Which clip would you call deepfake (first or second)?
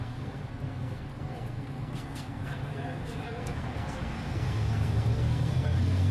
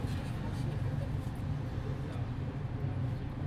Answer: first